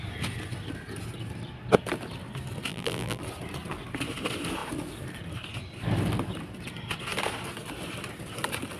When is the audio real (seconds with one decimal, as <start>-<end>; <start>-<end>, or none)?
0.0-2.7; 3.2-8.8